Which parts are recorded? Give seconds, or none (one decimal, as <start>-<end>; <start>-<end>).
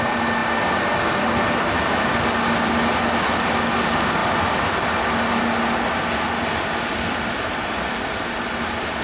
0.0-9.0